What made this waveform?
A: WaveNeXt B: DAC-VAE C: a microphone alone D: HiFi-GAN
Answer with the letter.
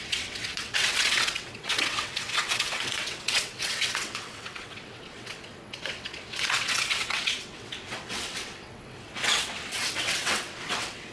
A